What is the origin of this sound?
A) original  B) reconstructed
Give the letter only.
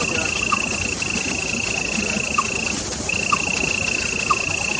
A